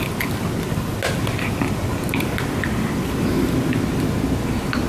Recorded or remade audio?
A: recorded